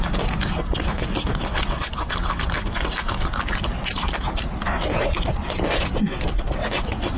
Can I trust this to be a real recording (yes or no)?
yes